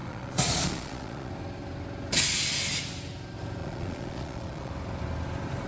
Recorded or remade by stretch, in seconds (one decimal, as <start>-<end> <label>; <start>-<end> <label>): 0.0-1.3 remade; 1.3-3.6 recorded; 3.6-4.7 remade; 4.7-5.7 recorded